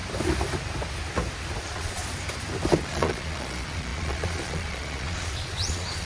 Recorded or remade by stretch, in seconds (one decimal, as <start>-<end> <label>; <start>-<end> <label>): 0.0-1.6 recorded; 1.6-2.0 remade; 2.0-2.8 recorded; 2.8-6.1 remade